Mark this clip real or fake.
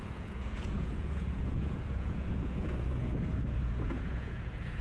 fake